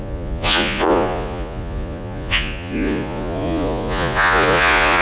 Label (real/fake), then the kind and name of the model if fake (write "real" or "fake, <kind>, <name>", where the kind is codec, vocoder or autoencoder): fake, vocoder, Vocos